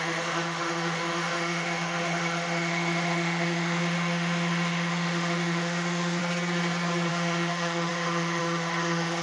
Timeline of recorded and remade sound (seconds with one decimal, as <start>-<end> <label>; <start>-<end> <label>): 0.0-6.2 remade; 6.2-7.1 recorded; 7.1-9.2 remade